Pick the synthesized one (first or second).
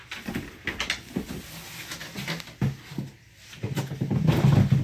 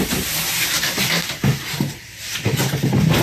second